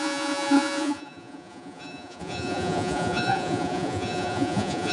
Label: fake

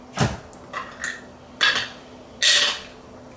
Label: real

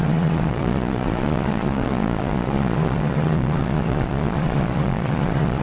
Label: fake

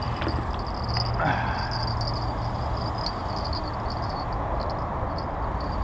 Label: real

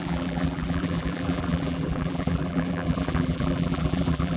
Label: fake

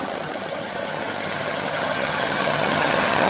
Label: fake